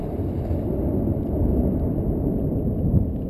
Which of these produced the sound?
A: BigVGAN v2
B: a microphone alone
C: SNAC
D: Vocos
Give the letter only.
B